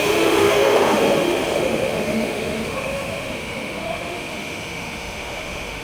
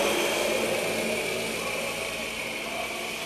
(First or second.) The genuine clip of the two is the second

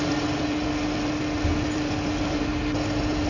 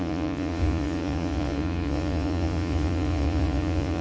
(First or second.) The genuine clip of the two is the first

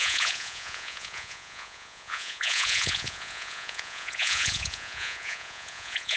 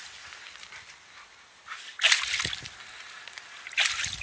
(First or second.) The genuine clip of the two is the second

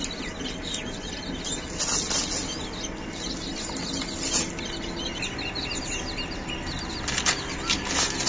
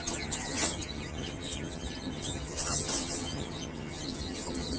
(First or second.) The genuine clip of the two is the first